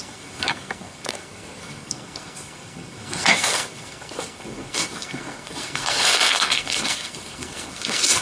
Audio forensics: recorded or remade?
remade